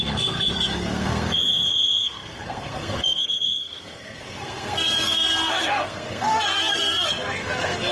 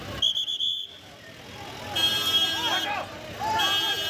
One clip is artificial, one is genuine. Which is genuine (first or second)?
second